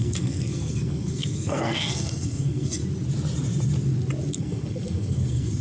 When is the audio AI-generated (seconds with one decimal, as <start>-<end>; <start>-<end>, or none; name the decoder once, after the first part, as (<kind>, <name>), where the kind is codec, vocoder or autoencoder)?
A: 0.0-2.8 (codec, SNAC); 4.3-5.6